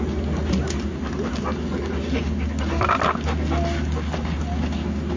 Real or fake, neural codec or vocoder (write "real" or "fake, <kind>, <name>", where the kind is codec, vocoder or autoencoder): real